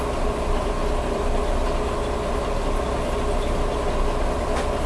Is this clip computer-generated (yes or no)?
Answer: no